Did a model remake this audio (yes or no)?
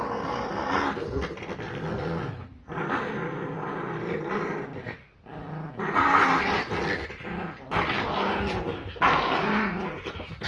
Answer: no